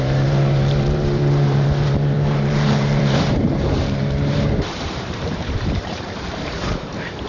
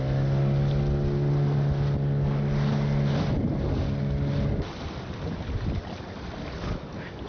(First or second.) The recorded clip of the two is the second